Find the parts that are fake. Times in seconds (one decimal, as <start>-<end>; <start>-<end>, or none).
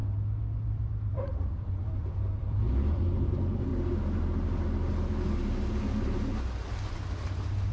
0.6-3.7; 6.9-7.7